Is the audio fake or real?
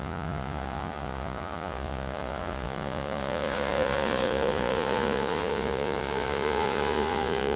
fake